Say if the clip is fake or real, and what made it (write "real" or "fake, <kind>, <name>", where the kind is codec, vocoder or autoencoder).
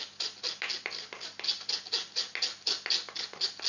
real